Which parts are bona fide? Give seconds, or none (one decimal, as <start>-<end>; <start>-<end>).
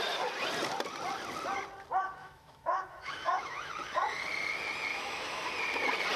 0.0-2.2; 3.7-4.9; 5.5-6.2